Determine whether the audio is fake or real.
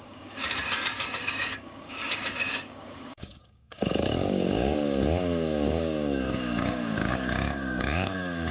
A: fake